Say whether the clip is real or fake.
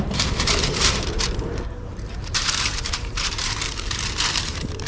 fake